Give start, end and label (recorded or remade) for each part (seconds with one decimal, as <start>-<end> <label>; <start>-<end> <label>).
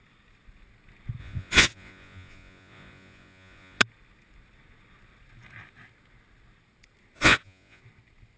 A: 0.0-1.2 recorded; 1.2-3.8 remade; 3.8-7.2 recorded; 7.2-7.8 remade; 7.8-8.4 recorded